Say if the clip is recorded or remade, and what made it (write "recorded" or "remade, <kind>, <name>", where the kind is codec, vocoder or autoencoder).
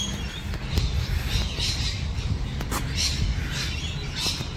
recorded